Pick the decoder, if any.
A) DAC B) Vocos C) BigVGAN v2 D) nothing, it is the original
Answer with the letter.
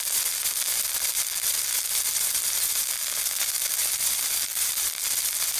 C